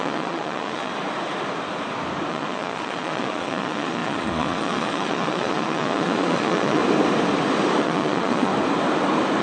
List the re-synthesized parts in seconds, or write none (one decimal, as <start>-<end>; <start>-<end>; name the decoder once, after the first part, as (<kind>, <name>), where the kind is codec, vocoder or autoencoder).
0.0-0.9 (vocoder, Vocos); 2.3-6.8; 7.8-8.5